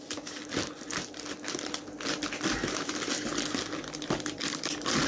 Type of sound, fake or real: real